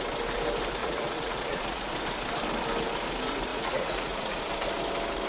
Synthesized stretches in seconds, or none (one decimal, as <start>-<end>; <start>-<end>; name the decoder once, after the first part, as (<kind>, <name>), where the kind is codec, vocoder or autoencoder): 0.8-1.8 (vocoder, Vocos); 3.5-4.4